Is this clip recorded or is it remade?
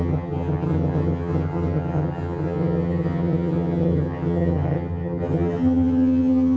remade